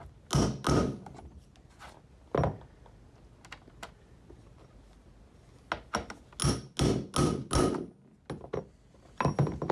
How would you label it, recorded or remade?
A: recorded